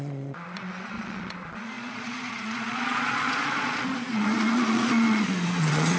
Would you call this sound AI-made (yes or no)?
yes